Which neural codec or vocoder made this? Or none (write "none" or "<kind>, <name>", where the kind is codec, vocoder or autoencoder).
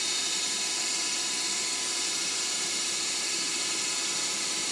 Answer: vocoder, BigVGAN v2